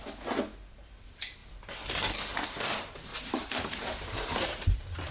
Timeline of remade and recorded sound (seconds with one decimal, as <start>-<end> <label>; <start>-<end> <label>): 0.0-3.1 recorded; 3.1-5.1 remade